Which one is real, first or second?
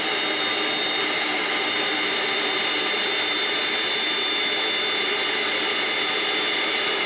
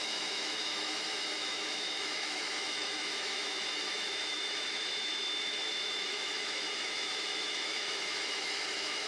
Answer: first